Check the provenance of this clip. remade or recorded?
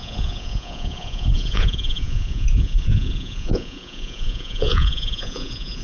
remade